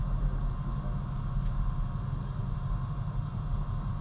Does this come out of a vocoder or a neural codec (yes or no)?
no